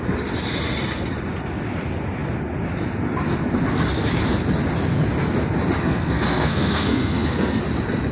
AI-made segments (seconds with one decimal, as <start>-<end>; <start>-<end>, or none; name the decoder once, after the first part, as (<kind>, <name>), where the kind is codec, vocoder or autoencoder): 5.8-7.6 (codec, SNAC)